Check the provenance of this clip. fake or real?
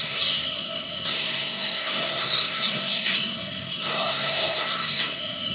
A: fake